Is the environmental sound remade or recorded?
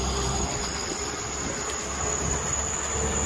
recorded